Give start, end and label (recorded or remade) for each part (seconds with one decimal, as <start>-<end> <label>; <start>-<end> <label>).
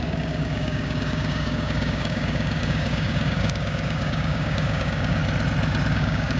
0.0-5.2 remade; 5.2-5.9 recorded; 5.9-6.4 remade